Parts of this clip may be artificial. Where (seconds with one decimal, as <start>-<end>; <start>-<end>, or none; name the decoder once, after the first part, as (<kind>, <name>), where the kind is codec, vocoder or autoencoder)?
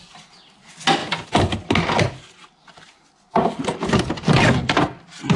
none